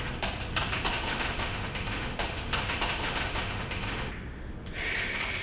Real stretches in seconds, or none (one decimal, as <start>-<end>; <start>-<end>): 0.0-0.9; 4.1-5.4